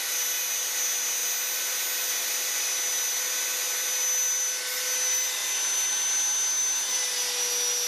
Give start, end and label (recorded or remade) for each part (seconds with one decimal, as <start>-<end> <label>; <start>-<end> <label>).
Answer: 0.0-7.9 recorded